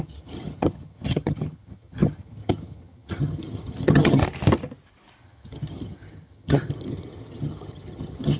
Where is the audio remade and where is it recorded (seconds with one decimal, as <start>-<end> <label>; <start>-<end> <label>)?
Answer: 0.0-4.2 remade; 4.2-5.2 recorded; 5.2-8.4 remade